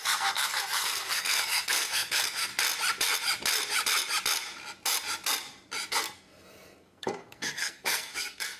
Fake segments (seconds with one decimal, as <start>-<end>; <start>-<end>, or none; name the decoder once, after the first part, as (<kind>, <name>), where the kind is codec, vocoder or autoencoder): 0.0-2.5 (codec, SNAC); 5.9-8.6